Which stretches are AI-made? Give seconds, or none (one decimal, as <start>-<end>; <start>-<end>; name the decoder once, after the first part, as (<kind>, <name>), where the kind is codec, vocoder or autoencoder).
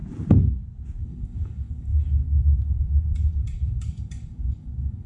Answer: 1.0-5.1 (codec, DAC)